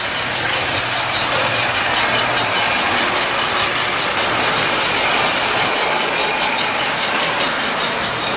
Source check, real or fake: real